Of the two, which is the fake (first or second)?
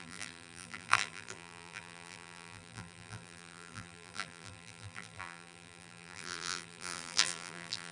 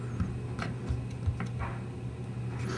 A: first